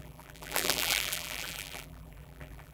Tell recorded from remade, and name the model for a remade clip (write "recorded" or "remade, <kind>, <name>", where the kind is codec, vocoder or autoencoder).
remade, vocoder, BigVGAN v2